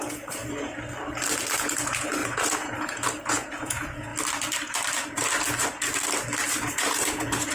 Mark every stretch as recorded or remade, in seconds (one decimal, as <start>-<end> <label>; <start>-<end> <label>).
0.0-0.4 remade; 0.4-1.6 recorded; 1.6-4.1 remade; 4.1-6.7 recorded; 6.7-7.5 remade